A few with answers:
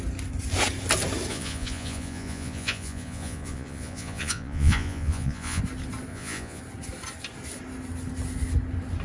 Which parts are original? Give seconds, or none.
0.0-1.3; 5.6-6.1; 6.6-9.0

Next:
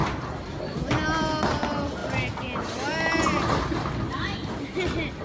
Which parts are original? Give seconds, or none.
0.0-5.2

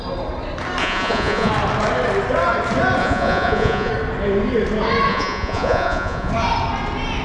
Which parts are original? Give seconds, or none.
0.0-0.8; 1.5-3.0; 3.9-5.1; 6.3-7.2

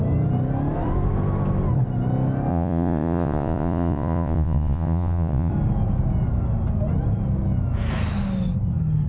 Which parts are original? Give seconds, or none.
0.0-2.5; 5.5-9.1

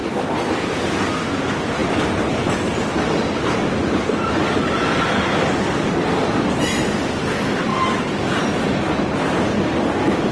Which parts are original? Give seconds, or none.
0.0-10.3